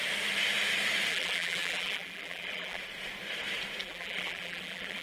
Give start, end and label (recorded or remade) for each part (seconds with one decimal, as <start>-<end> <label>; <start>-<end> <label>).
0.0-1.1 recorded; 1.1-2.8 remade; 2.8-3.8 recorded; 3.8-5.0 remade

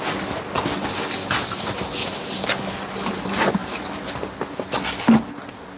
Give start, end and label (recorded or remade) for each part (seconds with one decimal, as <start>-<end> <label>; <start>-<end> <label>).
0.0-5.8 recorded